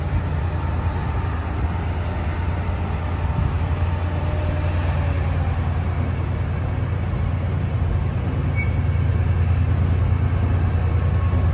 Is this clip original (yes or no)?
yes